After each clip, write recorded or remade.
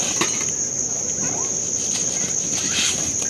recorded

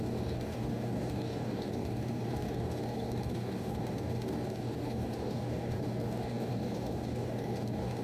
remade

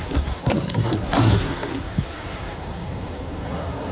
remade